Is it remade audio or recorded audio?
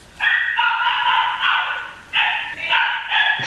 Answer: remade